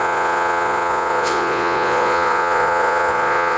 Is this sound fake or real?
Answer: fake